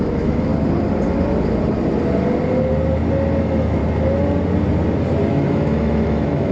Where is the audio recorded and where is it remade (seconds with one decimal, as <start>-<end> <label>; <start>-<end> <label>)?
0.0-0.5 remade; 0.5-3.4 recorded; 3.4-3.8 remade; 3.8-5.3 recorded; 5.3-6.5 remade